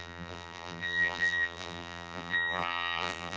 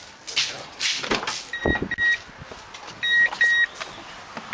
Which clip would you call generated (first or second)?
first